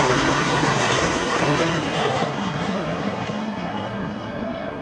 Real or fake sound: fake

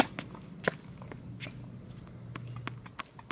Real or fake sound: real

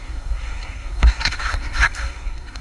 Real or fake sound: fake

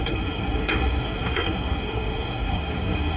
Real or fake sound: fake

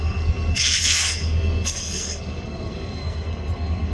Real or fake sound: fake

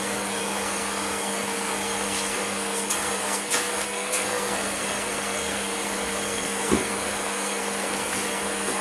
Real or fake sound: fake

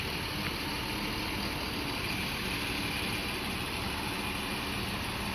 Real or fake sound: real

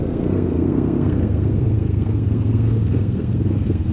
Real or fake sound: fake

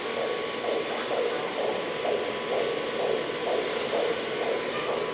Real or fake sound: real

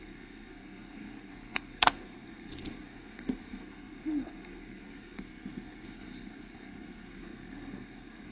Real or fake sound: fake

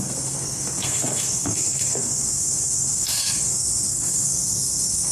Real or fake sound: fake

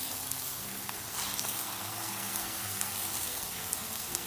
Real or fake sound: fake